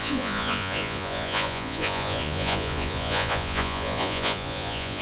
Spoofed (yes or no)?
yes